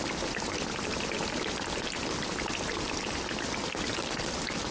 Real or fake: real